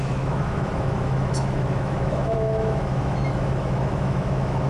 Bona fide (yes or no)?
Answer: no